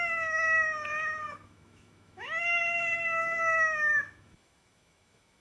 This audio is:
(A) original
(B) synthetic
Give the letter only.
B